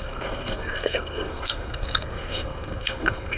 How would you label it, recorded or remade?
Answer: remade